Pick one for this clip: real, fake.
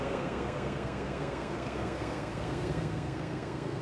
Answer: fake